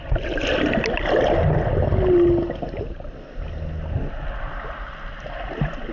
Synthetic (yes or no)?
no